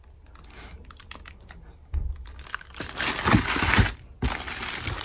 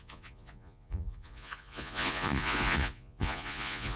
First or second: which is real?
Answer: first